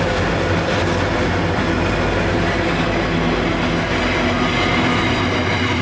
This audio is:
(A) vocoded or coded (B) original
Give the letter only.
B